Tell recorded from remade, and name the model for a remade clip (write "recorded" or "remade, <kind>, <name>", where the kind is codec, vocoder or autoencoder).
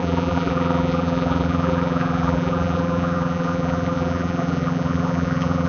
remade, vocoder, BigVGAN v2